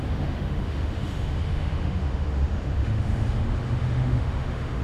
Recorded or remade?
remade